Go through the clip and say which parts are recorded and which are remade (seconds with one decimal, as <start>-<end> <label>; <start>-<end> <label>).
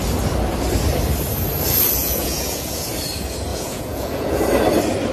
0.0-2.0 recorded; 2.0-2.9 remade; 2.9-3.5 recorded; 3.5-4.4 remade; 4.4-5.1 recorded